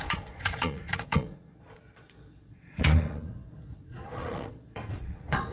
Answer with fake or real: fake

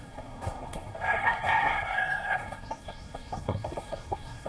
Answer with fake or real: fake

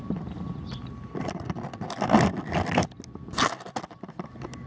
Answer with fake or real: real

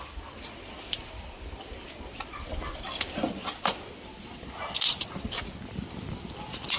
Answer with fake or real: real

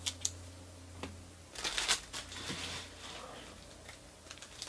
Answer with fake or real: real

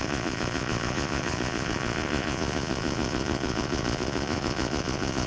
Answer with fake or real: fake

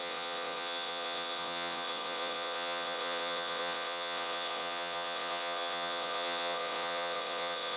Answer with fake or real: fake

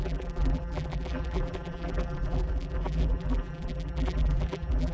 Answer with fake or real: fake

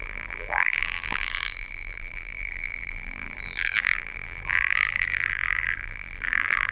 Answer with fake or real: fake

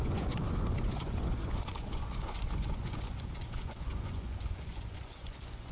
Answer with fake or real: fake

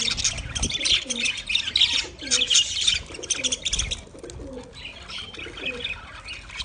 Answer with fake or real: real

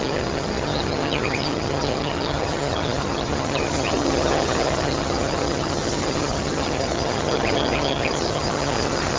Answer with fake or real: fake